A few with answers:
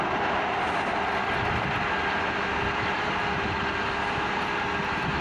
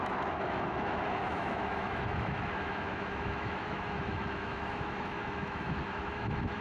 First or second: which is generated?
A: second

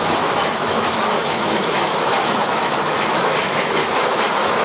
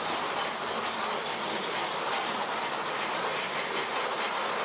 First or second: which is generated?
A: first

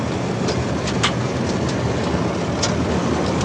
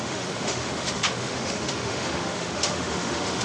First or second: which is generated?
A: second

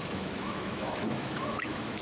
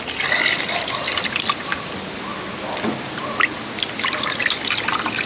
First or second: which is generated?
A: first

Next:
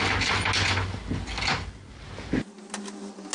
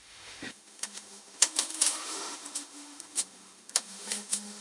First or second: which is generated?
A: second